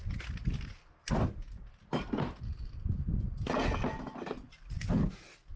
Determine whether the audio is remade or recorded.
recorded